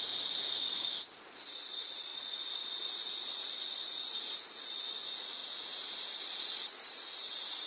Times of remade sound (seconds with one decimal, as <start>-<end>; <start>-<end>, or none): 0.0-0.9; 1.5-7.7